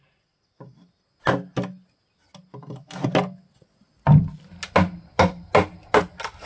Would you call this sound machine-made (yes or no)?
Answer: no